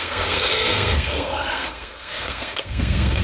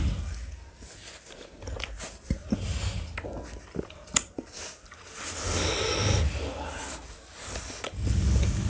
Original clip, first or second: second